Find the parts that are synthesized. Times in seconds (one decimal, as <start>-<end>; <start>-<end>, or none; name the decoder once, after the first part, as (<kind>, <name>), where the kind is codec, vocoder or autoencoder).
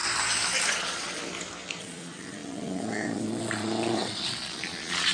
0.7-1.2 (vocoder, Vocos); 1.8-5.1